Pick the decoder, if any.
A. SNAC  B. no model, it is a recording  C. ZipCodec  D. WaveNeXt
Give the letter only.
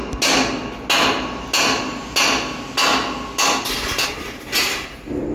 B